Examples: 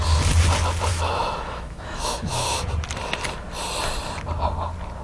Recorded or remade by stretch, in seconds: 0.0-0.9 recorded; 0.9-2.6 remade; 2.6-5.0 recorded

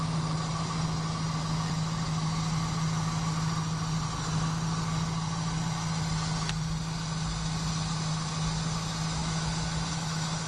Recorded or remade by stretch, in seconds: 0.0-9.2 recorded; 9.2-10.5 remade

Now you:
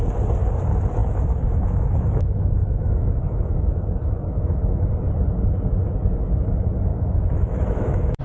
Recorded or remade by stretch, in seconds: 0.0-1.0 recorded; 1.0-4.9 remade; 4.9-6.9 recorded; 6.9-8.2 remade

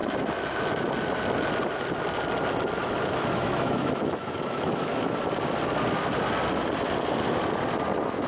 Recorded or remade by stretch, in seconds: 0.0-2.8 recorded; 2.8-5.1 remade; 5.1-8.3 recorded

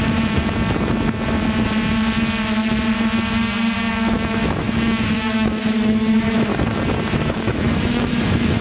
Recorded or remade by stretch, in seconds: 0.0-0.4 remade; 0.4-3.9 recorded; 3.9-6.5 remade; 6.5-7.3 recorded; 7.3-8.6 remade

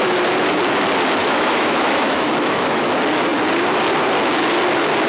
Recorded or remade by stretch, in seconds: 0.0-1.2 recorded; 1.2-2.9 remade; 2.9-5.1 recorded